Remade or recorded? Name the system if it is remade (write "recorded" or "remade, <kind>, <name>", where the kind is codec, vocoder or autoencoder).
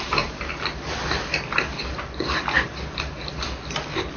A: recorded